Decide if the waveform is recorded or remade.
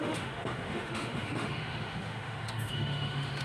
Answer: remade